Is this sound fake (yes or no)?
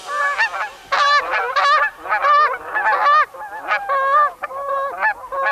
no